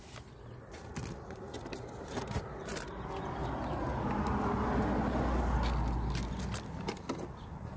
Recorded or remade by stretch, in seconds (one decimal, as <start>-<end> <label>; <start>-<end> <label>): 0.0-7.8 recorded